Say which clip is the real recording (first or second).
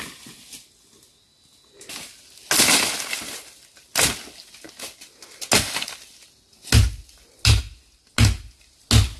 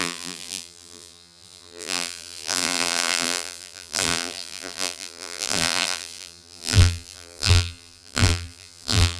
first